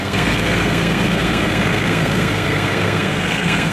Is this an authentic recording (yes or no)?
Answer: no